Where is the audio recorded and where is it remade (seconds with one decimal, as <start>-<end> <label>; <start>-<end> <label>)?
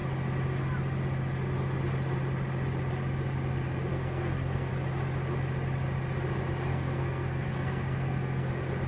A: 0.0-3.9 recorded; 3.9-4.7 remade; 4.7-6.7 recorded; 6.7-8.5 remade; 8.5-8.9 recorded